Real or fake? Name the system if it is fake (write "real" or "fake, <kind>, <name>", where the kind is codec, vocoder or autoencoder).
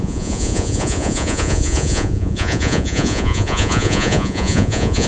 fake, vocoder, Vocos